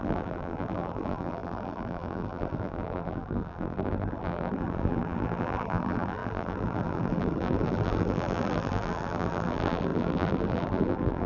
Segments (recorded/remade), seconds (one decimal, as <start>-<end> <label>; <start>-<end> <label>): 0.0-11.3 remade